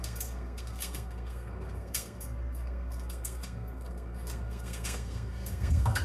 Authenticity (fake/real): fake